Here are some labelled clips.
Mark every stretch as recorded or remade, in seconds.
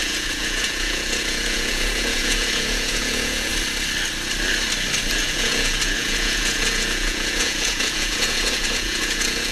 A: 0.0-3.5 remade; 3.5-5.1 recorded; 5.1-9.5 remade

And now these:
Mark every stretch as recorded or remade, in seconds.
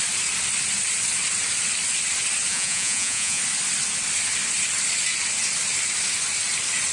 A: 0.0-2.5 recorded; 2.5-3.4 remade; 3.4-6.9 recorded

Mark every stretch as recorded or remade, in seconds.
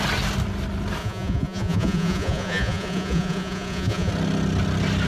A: 0.0-1.0 recorded; 1.0-4.1 remade; 4.1-5.1 recorded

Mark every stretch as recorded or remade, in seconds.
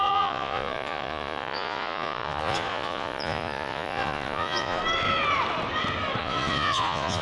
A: 0.0-4.8 remade; 4.8-6.2 recorded; 6.2-7.2 remade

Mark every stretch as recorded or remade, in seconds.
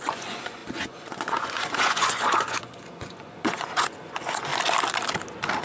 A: 0.0-4.5 remade; 4.5-5.6 recorded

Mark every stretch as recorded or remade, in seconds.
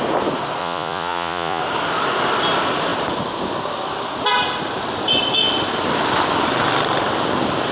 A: 0.0-0.6 recorded; 0.6-1.6 remade; 1.6-7.7 recorded